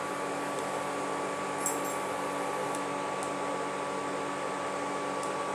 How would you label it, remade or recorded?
recorded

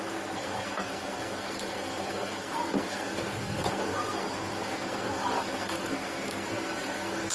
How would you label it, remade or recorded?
remade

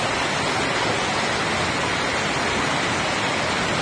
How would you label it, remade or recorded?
recorded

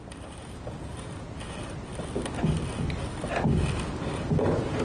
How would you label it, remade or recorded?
recorded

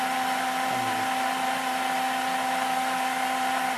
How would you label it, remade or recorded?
recorded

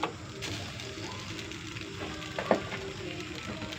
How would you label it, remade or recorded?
recorded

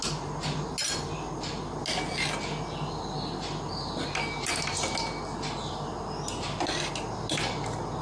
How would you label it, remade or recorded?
recorded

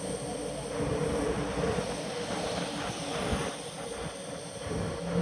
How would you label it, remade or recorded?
recorded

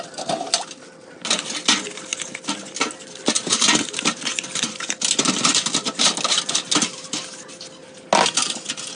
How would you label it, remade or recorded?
recorded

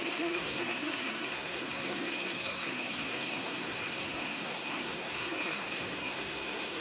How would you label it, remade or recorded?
remade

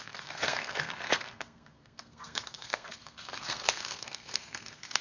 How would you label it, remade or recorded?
remade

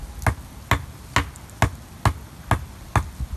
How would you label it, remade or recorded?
recorded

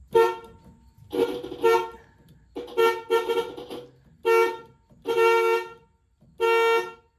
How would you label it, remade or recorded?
recorded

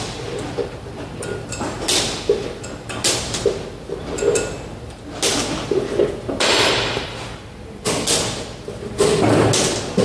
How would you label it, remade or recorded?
recorded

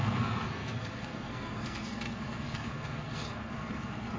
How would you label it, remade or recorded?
remade